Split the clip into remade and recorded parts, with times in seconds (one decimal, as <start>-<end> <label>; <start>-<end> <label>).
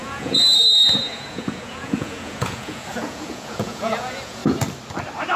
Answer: 0.0-4.4 remade; 4.4-5.4 recorded